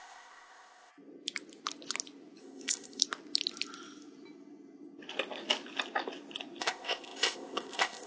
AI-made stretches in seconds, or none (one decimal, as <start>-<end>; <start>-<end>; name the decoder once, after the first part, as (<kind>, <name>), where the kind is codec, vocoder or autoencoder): 0.0-0.9 (codec, ZipCodec); 2.4-3.0; 6.6-8.1